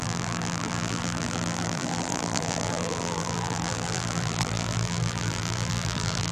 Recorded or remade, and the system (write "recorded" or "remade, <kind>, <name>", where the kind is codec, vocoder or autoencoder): remade, vocoder, BigVGAN v2